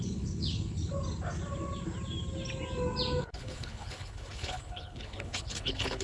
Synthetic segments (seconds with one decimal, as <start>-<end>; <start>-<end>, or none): 0.0-0.9; 3.2-6.0